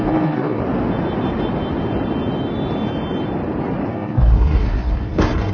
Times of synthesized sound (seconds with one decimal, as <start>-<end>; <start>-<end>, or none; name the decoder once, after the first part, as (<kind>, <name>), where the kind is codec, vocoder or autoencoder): 0.0-0.6 (codec, SNAC); 3.9-5.5

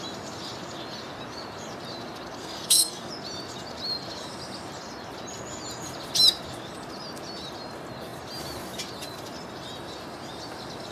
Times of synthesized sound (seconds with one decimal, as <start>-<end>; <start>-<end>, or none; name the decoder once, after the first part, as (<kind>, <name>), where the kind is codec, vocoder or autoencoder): 2.4-3.1 (codec, SNAC)

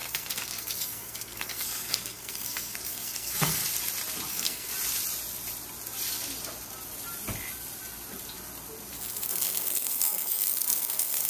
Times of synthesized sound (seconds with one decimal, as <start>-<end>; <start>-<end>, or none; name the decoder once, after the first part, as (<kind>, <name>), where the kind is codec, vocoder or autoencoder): 0.0-3.6 (codec, SNAC); 4.3-4.7; 9.3-11.3

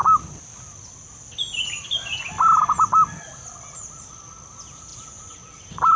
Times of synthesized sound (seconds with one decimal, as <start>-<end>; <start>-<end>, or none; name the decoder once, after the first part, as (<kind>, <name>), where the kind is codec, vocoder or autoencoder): 4.9-6.0 (vocoder, BigVGAN v2)